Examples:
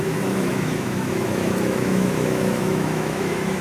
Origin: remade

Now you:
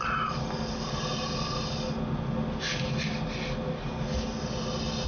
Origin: recorded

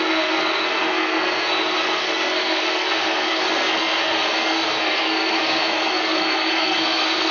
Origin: remade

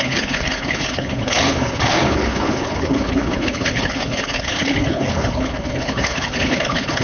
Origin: remade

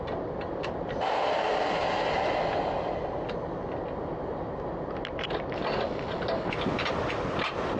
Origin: recorded